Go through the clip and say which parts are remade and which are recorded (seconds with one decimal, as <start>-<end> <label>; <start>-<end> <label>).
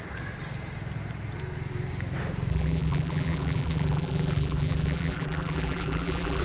0.0-2.5 recorded; 2.5-6.4 remade